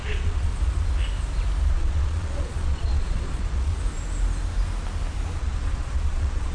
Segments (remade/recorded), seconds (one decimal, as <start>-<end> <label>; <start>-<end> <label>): 0.0-0.5 remade; 0.5-1.7 recorded; 1.7-3.7 remade; 3.7-5.4 recorded; 5.4-6.5 remade